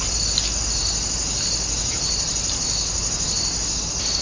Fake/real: real